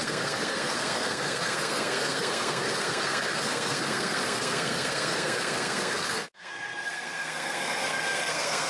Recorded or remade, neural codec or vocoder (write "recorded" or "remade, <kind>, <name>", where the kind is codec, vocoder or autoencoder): remade, codec, SNAC